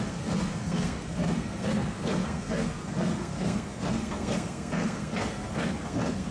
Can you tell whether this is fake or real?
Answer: fake